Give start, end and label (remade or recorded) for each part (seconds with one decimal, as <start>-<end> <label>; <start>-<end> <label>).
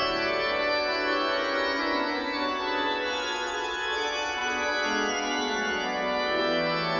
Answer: 0.0-7.0 recorded